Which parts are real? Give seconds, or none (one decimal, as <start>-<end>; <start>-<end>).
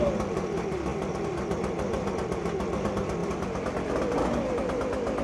0.0-5.2